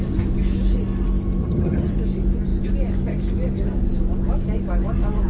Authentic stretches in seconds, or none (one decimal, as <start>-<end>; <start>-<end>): 0.0-1.4; 1.9-5.3